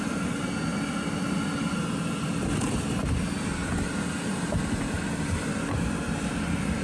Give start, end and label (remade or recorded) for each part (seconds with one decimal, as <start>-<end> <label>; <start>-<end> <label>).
0.0-6.8 recorded